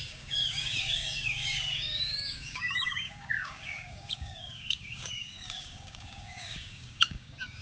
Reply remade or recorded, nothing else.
remade